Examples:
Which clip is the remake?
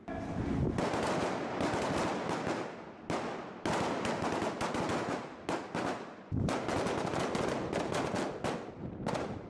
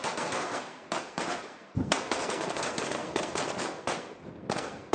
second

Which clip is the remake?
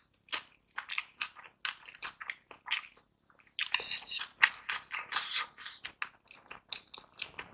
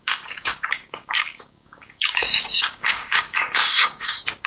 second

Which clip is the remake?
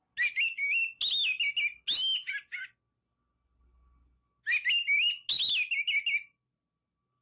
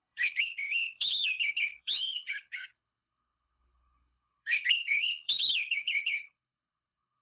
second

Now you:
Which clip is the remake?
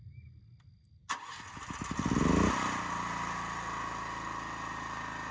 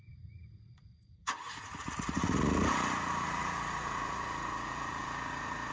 second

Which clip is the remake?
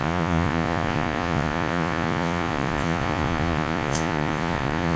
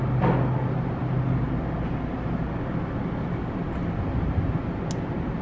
first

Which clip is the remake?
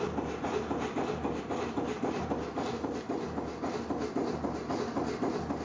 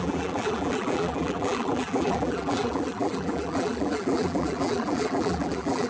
second